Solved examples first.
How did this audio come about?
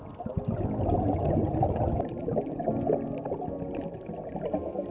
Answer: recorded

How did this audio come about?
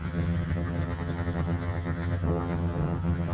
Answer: remade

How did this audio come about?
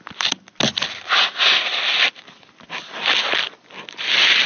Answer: recorded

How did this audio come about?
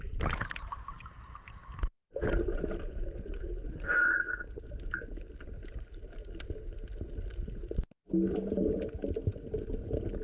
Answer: recorded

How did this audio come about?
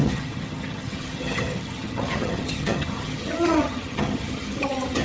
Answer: remade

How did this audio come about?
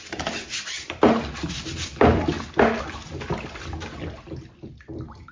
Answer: recorded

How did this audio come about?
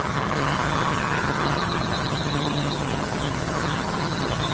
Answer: remade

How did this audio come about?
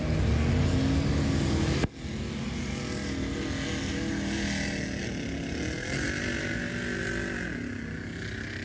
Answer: recorded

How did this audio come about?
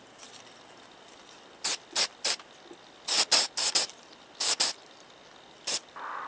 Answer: recorded